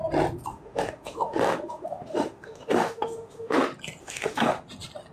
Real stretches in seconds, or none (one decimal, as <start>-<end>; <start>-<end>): 0.0-0.5; 3.6-4.0; 4.5-5.1